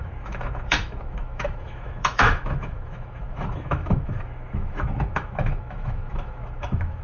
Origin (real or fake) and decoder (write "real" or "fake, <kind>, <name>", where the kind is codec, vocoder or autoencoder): fake, autoencoder, DAC-VAE